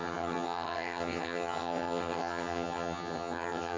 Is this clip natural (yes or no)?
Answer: no